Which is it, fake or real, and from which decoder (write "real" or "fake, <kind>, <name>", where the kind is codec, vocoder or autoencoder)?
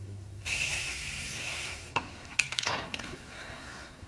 fake, codec, SNAC